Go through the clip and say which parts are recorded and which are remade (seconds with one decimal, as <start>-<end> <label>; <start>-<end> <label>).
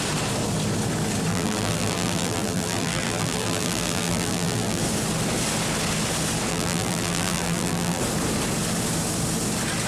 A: 0.0-1.3 recorded; 1.3-4.8 remade; 4.8-6.5 recorded; 6.5-8.0 remade; 8.0-9.9 recorded